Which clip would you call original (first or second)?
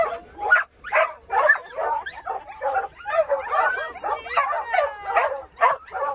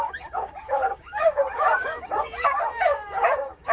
first